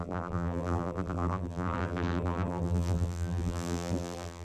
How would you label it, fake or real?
fake